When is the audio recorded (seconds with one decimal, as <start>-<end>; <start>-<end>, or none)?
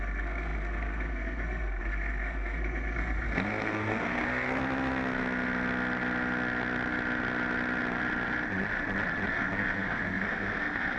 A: 4.2-9.3